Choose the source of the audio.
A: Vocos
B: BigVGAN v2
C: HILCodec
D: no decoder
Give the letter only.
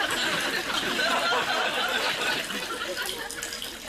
D